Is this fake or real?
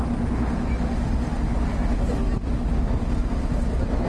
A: real